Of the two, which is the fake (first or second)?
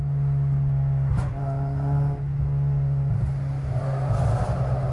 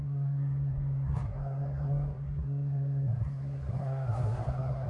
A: second